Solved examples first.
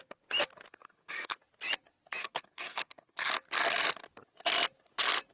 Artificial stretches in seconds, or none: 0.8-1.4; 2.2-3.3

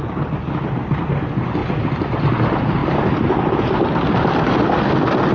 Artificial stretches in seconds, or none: none

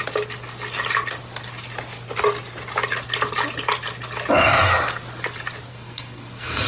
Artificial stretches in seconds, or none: 5.7-6.7

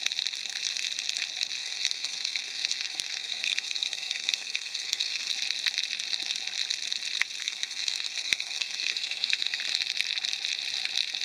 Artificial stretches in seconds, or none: 1.6-5.3; 7.4-9.6

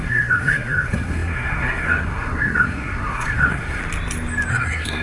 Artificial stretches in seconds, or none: 0.0-3.8; 4.5-5.0